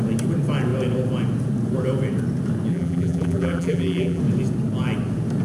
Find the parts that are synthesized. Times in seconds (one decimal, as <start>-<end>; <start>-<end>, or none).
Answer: 2.7-4.2